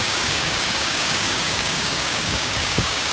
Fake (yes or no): yes